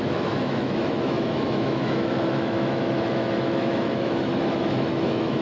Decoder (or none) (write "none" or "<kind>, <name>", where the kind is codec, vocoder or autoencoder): autoencoder, DAC-VAE